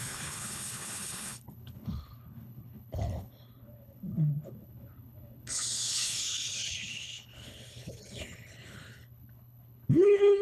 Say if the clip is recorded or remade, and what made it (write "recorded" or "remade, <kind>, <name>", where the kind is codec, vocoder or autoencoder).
remade, codec, HILCodec